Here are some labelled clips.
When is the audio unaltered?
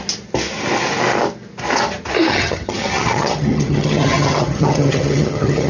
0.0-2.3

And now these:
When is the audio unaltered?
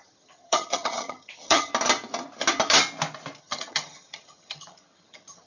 1.7-3.4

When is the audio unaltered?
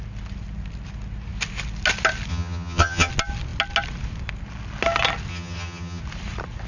0.0-2.3; 3.1-5.3; 6.0-6.7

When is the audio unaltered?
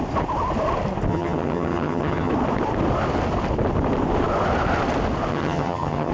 0.0-1.1; 2.3-5.3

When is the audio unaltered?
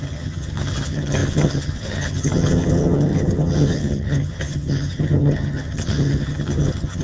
none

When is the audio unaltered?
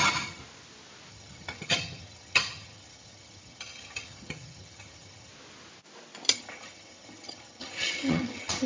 0.4-1.1; 5.3-6.3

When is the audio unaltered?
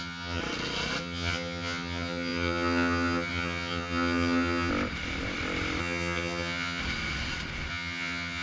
0.4-1.0; 4.7-5.8; 6.8-7.7